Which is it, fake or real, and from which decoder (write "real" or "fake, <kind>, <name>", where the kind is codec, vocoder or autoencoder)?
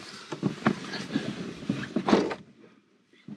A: real